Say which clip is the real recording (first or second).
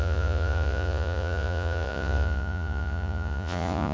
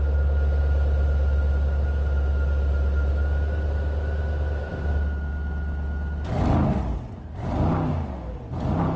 second